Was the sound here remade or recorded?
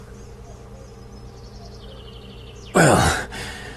recorded